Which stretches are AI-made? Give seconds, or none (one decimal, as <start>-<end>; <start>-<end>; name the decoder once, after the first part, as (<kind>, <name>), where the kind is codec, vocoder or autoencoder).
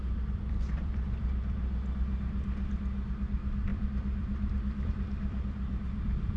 0.0-1.6 (vocoder, BigVGAN v2); 3.1-6.4